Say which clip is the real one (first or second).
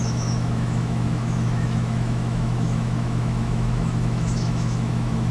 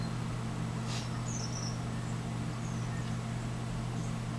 second